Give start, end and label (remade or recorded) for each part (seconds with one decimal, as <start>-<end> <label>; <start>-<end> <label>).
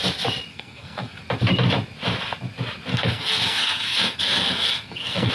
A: 0.0-0.5 recorded; 0.5-1.2 remade; 1.2-2.9 recorded; 2.9-5.3 remade